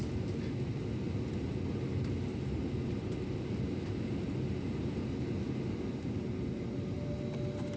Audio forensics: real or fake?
real